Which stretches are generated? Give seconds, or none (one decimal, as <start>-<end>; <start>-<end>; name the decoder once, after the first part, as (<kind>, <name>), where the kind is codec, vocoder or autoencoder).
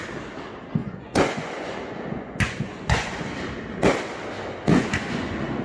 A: 0.8-3.3 (vocoder, Vocos); 4.7-5.6